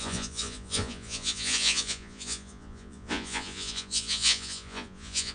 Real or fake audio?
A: fake